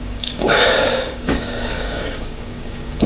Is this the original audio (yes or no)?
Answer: no